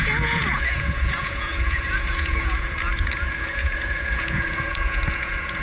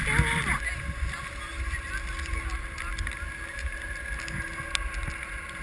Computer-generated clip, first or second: first